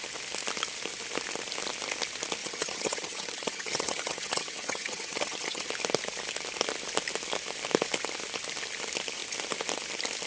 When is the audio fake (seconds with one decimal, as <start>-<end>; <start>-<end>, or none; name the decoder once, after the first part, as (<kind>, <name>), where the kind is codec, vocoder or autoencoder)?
2.4-5.7 (vocoder, HiFi-GAN)